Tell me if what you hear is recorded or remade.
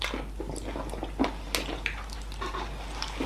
recorded